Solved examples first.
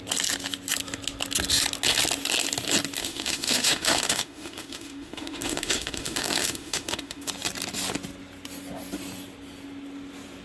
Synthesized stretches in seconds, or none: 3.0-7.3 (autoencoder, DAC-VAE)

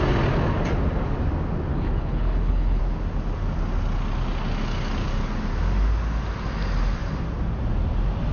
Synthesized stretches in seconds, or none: 1.7-2.8 (codec, HILCodec)

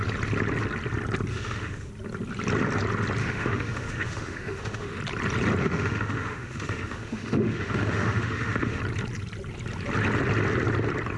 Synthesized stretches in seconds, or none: 1.3-1.9 (autoencoder, DAC-VAE); 3.2-5.0; 5.6-8.8

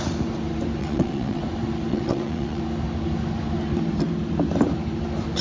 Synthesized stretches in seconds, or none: 0.8-1.4 (vocoder, WaveNeXt); 1.9-2.6

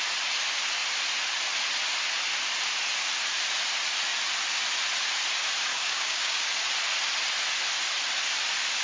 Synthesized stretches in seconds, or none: 5.7-6.5 (codec, DAC)

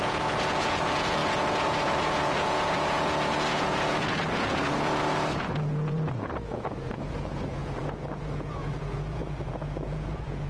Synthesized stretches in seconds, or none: 0.0-10.5 (vocoder, Vocos)

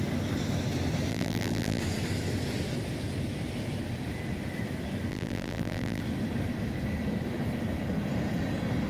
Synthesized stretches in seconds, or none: 1.1-1.8 (vocoder, BigVGAN v2); 5.1-6.0